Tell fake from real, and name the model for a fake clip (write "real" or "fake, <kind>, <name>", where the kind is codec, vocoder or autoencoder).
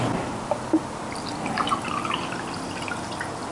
real